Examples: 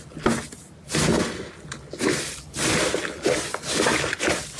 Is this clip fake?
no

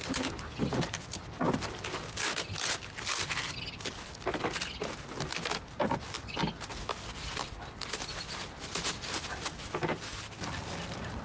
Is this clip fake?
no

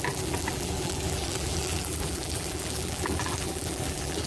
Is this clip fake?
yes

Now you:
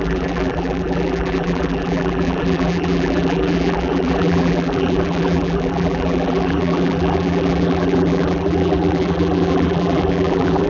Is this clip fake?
yes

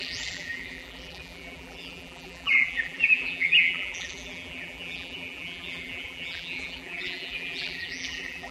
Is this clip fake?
yes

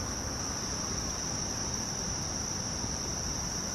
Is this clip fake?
yes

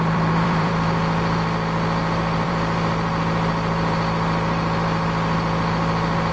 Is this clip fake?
yes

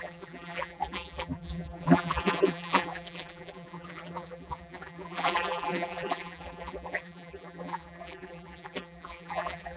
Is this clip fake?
yes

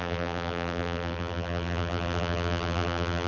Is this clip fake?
yes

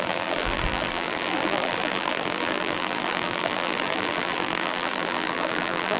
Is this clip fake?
yes